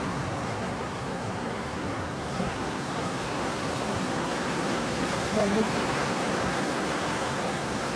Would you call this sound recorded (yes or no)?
no